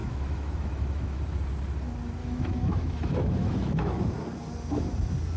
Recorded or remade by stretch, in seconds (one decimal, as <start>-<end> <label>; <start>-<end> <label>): 0.0-1.2 remade; 1.2-2.2 recorded; 2.2-4.0 remade; 4.0-5.4 recorded